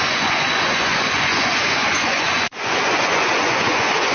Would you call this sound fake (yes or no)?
yes